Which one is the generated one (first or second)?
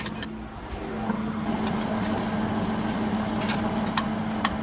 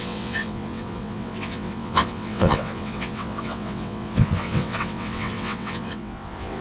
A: second